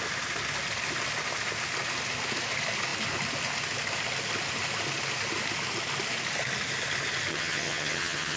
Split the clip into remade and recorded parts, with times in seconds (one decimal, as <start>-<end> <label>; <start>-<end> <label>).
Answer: 0.0-7.3 recorded; 7.3-8.4 remade